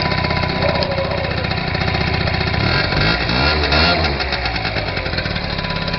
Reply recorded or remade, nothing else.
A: recorded